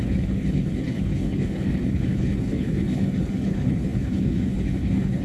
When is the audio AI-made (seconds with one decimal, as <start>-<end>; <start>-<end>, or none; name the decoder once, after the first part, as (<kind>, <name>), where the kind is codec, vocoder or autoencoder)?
0.0-5.2 (codec, HILCodec)